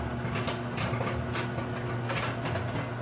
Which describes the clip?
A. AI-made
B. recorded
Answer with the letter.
B